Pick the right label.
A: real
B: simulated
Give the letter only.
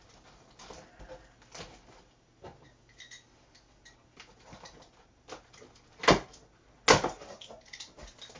A